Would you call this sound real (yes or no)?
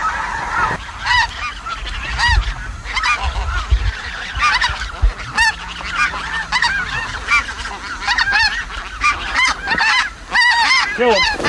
yes